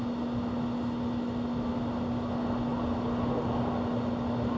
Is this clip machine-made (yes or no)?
no